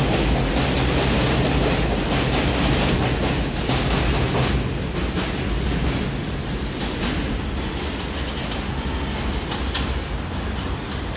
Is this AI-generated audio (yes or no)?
no